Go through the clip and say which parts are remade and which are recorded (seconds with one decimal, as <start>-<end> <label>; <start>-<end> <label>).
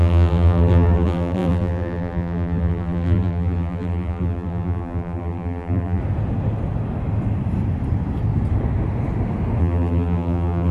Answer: 0.0-6.0 remade; 6.0-9.6 recorded; 9.6-10.7 remade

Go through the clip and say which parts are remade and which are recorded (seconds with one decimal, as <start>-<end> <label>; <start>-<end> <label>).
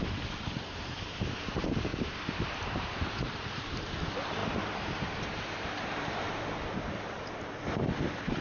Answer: 0.0-8.4 remade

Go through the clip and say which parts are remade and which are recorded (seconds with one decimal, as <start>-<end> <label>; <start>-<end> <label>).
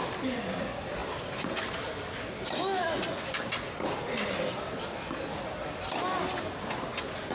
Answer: 0.0-7.3 recorded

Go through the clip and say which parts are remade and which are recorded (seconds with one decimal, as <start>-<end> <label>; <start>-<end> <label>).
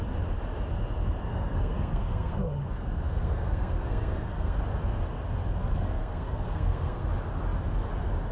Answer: 0.0-1.3 recorded; 1.3-4.6 remade; 4.6-5.6 recorded; 5.6-7.1 remade; 7.1-8.3 recorded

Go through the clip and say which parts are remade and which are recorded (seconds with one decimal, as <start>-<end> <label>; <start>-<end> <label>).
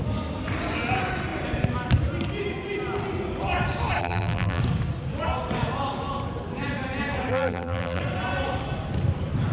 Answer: 0.0-4.0 recorded; 4.0-4.6 remade; 4.6-7.3 recorded; 7.3-8.0 remade; 8.0-9.5 recorded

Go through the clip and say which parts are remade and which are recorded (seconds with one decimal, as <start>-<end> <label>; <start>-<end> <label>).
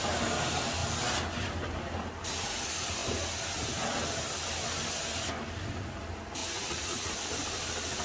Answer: 0.0-6.4 recorded; 6.4-7.1 remade; 7.1-8.0 recorded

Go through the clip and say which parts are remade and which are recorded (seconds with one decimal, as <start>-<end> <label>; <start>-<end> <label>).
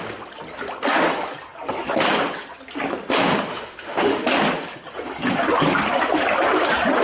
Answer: 0.0-3.5 recorded; 3.5-4.3 remade; 4.3-7.0 recorded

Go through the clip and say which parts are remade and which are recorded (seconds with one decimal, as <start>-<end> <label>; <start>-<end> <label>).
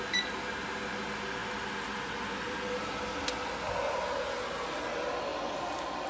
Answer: 0.0-6.1 recorded